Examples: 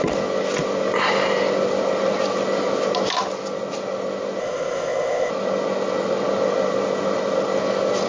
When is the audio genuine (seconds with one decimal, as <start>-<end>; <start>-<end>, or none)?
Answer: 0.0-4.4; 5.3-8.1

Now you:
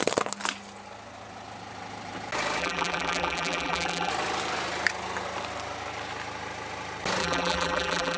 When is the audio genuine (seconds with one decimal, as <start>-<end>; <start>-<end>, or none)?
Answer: 0.0-2.6; 4.1-7.2

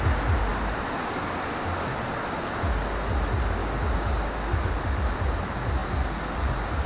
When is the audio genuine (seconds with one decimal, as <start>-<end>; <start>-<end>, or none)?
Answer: 0.0-3.6; 4.7-6.9